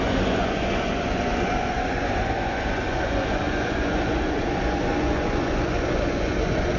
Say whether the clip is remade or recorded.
remade